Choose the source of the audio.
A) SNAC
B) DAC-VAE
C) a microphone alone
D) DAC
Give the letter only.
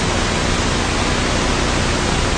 C